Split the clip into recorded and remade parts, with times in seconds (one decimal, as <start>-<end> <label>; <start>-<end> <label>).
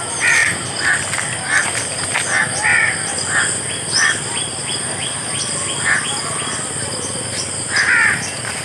0.0-8.6 recorded